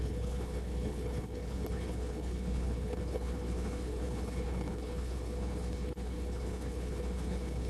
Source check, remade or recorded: remade